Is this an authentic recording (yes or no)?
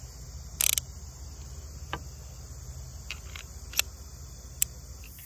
yes